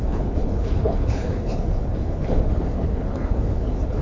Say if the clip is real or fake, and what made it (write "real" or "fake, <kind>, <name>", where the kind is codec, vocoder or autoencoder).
fake, codec, HILCodec